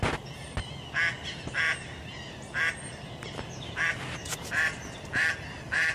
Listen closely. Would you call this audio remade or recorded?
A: recorded